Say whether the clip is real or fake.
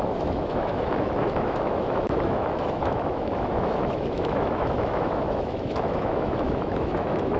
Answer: fake